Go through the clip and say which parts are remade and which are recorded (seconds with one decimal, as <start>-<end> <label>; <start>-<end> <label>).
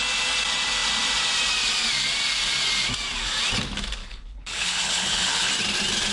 0.0-4.0 recorded; 4.0-5.5 remade; 5.5-6.1 recorded